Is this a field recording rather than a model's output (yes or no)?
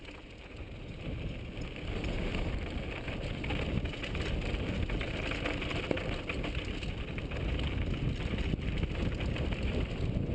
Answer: yes